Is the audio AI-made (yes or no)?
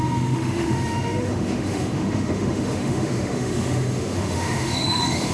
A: yes